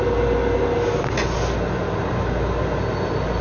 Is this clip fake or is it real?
real